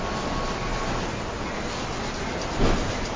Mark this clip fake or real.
real